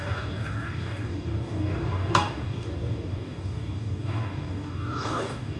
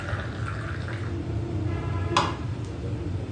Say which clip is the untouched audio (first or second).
second